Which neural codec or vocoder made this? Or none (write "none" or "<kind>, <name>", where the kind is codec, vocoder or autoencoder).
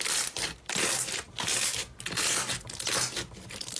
none